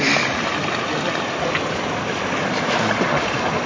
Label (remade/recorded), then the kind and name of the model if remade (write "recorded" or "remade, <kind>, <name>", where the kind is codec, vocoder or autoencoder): recorded